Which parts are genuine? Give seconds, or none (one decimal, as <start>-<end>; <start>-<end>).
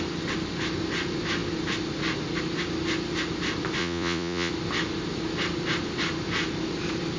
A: 0.0-3.8; 4.5-7.2